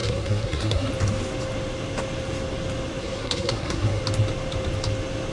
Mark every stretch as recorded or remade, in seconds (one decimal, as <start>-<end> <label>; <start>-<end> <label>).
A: 0.0-0.9 remade; 0.9-3.0 recorded; 3.0-4.0 remade; 4.0-5.3 recorded